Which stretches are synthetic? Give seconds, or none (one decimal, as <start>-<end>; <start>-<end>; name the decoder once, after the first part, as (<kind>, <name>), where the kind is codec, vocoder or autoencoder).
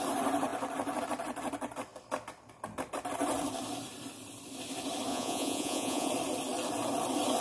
5.1-6.1 (vocoder, Vocos)